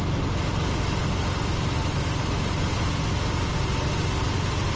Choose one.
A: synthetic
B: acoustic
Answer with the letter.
B